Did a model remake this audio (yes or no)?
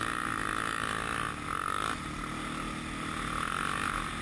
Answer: no